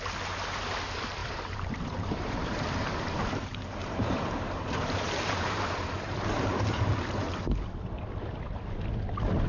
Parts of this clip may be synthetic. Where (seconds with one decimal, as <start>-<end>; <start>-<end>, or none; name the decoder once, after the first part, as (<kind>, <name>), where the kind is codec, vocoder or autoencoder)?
1.2-3.2 (vocoder, BigVGAN v2); 3.8-7.3